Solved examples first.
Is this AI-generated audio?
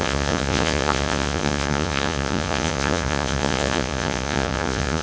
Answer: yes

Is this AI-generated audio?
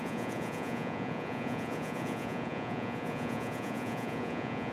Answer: yes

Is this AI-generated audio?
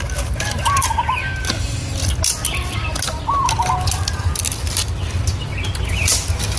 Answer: no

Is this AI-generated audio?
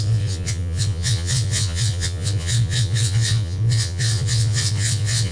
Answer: yes